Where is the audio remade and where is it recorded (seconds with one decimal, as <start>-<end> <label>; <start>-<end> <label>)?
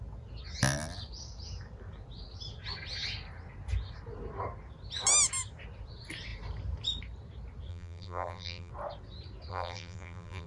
0.0-7.7 recorded; 7.7-8.7 remade; 8.7-9.5 recorded; 9.5-10.5 remade